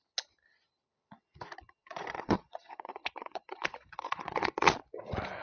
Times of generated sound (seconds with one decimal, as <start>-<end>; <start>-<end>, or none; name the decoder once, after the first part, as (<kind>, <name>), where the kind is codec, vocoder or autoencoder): 1.8-5.0 (vocoder, Vocos)